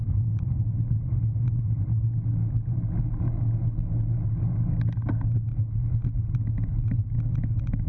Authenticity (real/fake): real